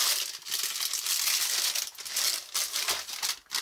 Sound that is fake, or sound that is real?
real